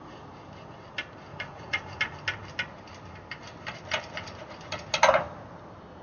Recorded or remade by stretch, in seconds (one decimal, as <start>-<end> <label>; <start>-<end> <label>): 0.0-1.3 recorded; 1.3-2.0 remade; 2.0-6.0 recorded